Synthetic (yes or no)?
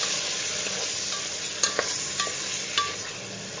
no